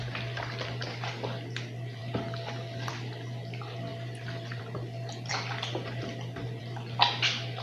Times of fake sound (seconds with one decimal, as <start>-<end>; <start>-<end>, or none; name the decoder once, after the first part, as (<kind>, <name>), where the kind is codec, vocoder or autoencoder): none